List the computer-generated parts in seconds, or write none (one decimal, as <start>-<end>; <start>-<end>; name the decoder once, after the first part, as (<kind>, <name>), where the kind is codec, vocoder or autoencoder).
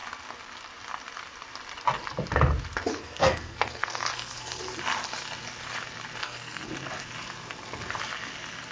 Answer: 2.9-4.6 (codec, SNAC); 6.2-6.7